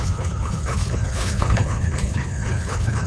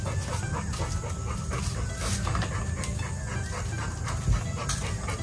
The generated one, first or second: first